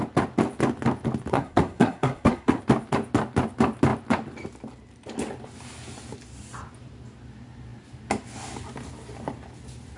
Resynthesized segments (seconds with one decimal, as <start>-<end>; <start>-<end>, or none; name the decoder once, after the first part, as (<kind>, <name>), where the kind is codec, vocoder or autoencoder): 1.3-2.6 (codec, SNAC)